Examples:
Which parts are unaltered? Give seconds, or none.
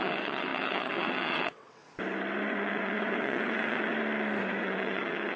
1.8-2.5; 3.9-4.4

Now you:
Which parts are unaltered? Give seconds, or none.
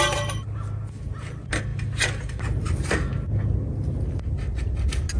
0.0-5.2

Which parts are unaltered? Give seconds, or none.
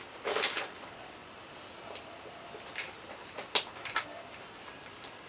0.0-5.3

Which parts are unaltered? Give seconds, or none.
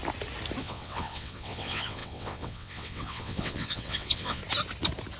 0.0-0.6; 4.4-5.2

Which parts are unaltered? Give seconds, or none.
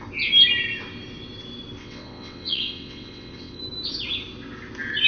0.0-1.8; 3.6-5.1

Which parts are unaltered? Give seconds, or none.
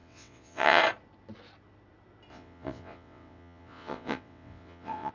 0.8-2.3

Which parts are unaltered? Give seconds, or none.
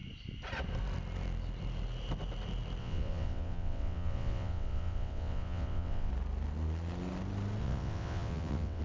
0.0-2.8; 6.1-7.6